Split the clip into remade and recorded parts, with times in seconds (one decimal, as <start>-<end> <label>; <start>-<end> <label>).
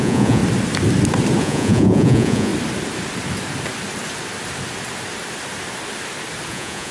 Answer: 0.0-0.4 remade; 0.4-1.4 recorded; 1.4-2.5 remade; 2.5-6.5 recorded; 6.5-6.9 remade